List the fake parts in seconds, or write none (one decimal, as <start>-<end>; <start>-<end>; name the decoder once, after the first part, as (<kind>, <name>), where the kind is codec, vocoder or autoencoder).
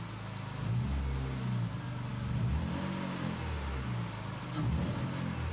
none